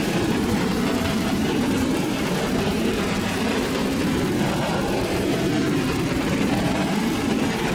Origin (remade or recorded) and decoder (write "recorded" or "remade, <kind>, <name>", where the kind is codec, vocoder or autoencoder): remade, vocoder, BigVGAN v2